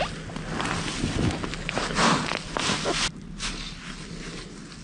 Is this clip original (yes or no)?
yes